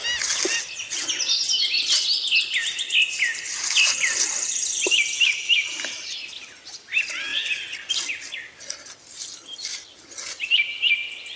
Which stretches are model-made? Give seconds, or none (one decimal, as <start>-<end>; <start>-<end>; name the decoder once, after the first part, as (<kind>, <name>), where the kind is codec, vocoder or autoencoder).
none